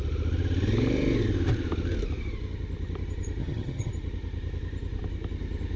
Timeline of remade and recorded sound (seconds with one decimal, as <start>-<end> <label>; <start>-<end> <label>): 0.0-3.4 recorded; 3.4-3.9 remade; 3.9-5.8 recorded